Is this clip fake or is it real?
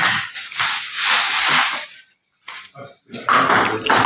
real